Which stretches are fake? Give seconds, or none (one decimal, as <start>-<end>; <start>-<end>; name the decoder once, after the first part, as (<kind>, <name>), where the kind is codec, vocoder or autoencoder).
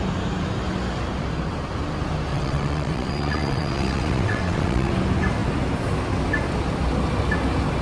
2.3-4.9 (vocoder, WaveNeXt)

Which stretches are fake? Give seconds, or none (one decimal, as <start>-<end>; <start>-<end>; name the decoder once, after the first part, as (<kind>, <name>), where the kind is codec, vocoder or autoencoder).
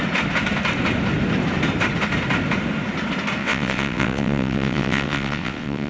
3.4-5.9 (vocoder, WaveNeXt)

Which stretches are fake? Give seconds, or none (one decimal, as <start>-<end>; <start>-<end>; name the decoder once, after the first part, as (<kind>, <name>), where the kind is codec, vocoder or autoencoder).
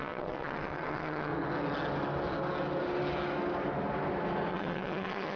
0.0-1.3 (vocoder, WaveNeXt); 4.5-5.4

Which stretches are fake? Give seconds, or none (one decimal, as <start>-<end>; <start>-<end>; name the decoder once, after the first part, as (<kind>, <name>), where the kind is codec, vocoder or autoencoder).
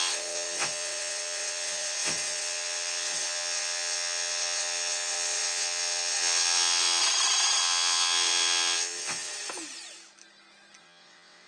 0.0-7.0 (vocoder, WaveNeXt); 7.6-9.3; 10.8-11.5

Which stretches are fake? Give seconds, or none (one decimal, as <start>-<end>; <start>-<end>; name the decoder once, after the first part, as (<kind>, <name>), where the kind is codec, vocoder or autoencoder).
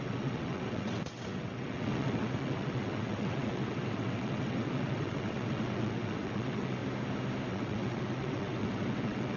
0.0-6.8 (vocoder, WaveNeXt); 7.5-9.4